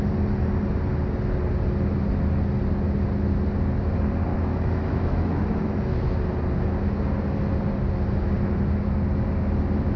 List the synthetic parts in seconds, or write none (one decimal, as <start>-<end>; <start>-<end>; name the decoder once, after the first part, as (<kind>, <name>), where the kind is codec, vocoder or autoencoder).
4.3-5.7 (autoencoder, DAC-VAE)